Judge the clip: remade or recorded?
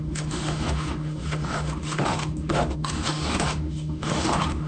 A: remade